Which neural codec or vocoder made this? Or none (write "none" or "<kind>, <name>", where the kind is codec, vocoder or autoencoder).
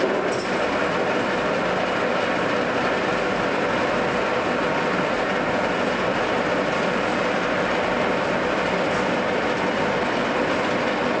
none